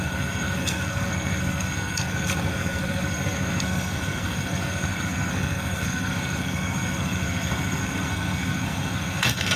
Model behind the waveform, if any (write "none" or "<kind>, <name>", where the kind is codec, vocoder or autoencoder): codec, SNAC